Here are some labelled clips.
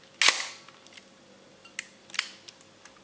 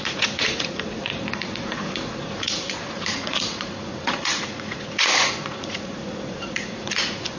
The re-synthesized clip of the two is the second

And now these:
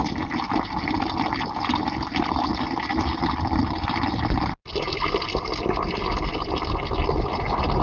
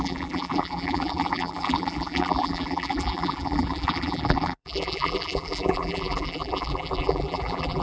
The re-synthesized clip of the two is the second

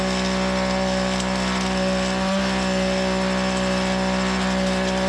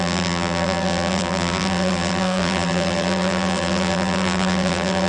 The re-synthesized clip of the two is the second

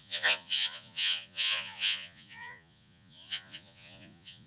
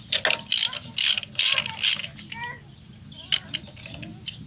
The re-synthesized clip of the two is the first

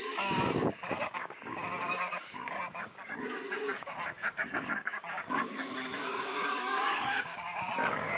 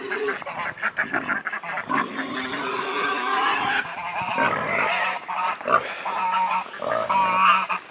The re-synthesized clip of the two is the first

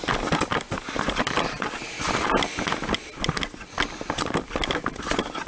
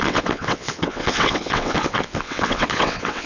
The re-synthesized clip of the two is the second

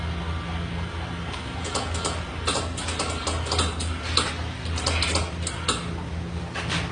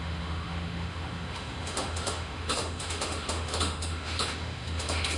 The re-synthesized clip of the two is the second